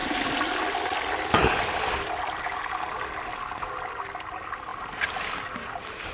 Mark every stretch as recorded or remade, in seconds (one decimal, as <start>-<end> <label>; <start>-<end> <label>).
0.0-6.1 recorded